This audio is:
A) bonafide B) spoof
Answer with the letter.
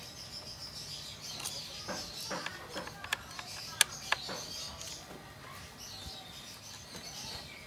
A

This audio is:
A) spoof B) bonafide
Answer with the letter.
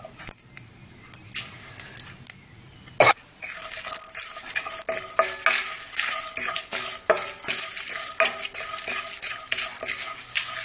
B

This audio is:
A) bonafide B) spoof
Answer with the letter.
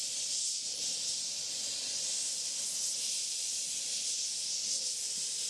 A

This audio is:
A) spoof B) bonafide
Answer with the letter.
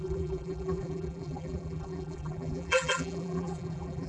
A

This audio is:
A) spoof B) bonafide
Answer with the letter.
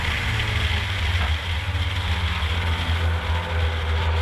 B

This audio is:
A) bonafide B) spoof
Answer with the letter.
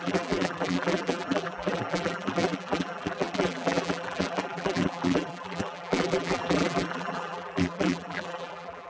B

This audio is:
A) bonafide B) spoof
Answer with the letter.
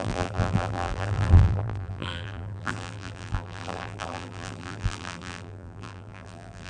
B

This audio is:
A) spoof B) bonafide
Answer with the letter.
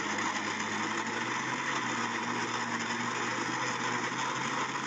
B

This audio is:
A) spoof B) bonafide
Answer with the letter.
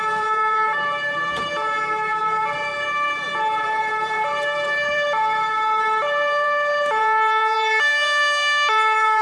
A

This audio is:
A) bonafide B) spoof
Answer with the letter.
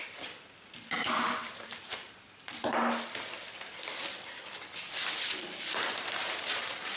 B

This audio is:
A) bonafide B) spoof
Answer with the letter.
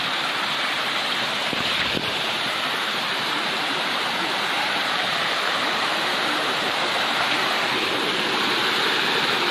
B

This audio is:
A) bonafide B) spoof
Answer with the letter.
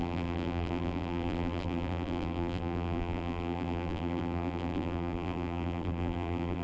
B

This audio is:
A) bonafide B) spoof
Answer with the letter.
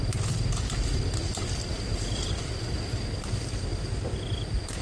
A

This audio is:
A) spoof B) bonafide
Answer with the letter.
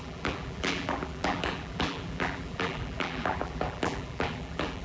A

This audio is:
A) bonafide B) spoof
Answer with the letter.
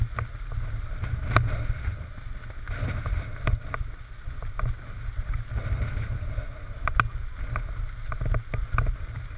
A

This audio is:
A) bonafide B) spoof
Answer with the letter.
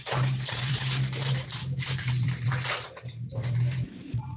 B